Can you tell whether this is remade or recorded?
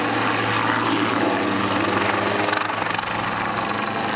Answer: recorded